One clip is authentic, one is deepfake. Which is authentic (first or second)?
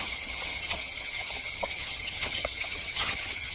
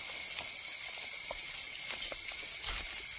second